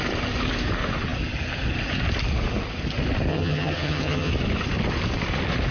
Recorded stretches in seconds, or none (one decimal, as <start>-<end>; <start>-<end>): 0.0-3.3; 4.3-5.7